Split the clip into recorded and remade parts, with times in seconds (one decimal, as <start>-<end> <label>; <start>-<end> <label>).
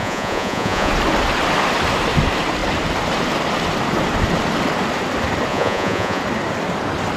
0.0-0.9 remade; 0.9-5.5 recorded; 5.5-6.2 remade; 6.2-7.2 recorded